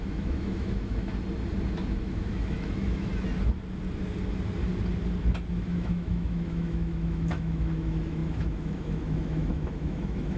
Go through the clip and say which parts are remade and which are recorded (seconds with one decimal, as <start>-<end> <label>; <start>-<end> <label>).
0.0-1.1 remade; 1.1-2.1 recorded; 2.1-3.1 remade; 3.1-5.5 recorded; 5.5-10.4 remade

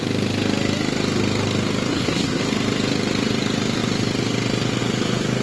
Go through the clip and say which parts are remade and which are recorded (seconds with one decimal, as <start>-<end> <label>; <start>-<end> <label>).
0.0-1.9 recorded; 1.9-2.4 remade; 2.4-5.4 recorded

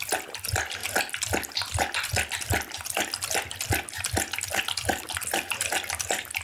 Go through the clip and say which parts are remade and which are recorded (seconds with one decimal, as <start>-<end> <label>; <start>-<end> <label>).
0.0-6.4 recorded

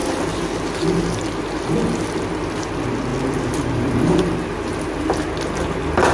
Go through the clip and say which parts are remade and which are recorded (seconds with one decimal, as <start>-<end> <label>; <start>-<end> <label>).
0.0-6.1 recorded